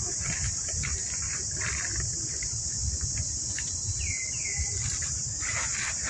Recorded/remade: remade